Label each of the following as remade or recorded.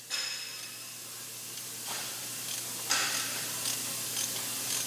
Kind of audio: recorded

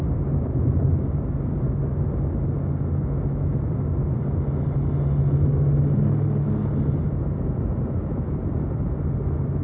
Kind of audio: recorded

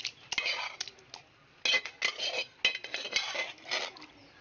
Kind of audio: recorded